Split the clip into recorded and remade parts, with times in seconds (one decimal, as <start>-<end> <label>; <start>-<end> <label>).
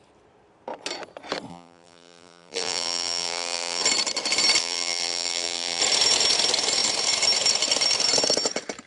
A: 0.0-1.5 recorded; 1.5-3.8 remade; 3.8-4.6 recorded; 4.6-5.8 remade; 5.8-8.9 recorded